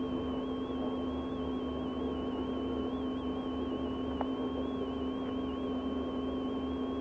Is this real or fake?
fake